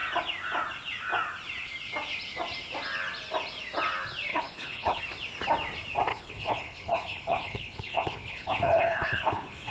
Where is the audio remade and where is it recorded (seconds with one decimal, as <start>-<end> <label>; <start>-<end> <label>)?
0.0-4.3 recorded; 4.3-5.0 remade; 5.0-6.1 recorded; 6.1-9.7 remade